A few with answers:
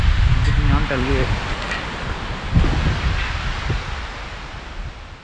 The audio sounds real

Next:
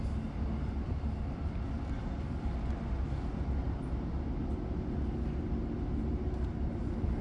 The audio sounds real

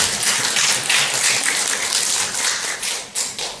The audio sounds real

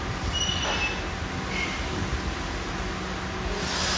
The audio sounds real